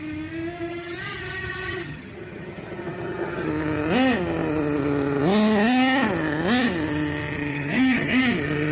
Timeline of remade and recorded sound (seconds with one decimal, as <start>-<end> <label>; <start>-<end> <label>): 0.0-0.7 recorded; 0.7-3.5 remade; 3.5-7.5 recorded; 7.5-8.2 remade; 8.2-8.7 recorded